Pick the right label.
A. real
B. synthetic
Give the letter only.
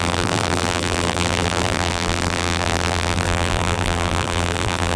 B